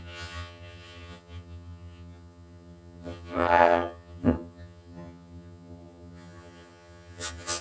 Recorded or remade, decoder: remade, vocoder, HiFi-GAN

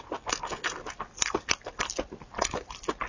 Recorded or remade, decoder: recorded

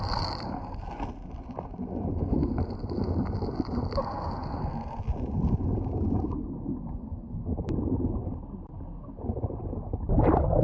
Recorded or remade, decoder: recorded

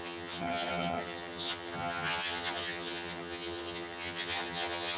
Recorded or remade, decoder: remade, vocoder, HiFi-GAN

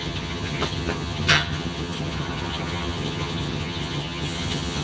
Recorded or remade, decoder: remade, vocoder, HiFi-GAN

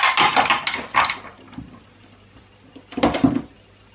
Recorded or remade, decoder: recorded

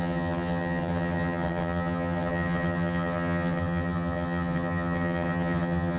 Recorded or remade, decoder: remade, vocoder, HiFi-GAN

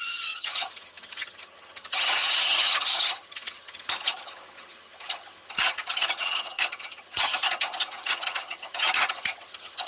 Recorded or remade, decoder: remade, vocoder, HiFi-GAN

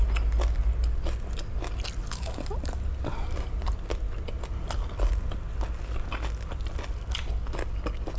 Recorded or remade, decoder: recorded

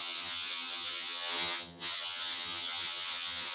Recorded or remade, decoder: remade, vocoder, HiFi-GAN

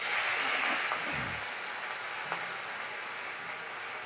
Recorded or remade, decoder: recorded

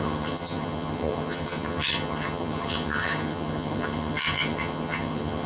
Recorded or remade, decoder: remade, vocoder, HiFi-GAN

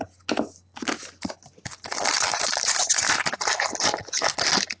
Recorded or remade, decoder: recorded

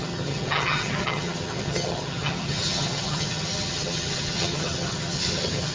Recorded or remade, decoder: remade, vocoder, HiFi-GAN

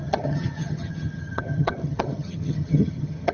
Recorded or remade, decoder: remade, vocoder, HiFi-GAN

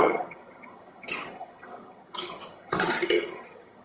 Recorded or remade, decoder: remade, vocoder, HiFi-GAN